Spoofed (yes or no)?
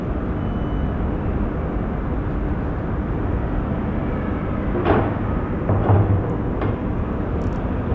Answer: no